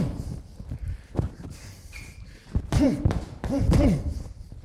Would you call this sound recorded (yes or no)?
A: no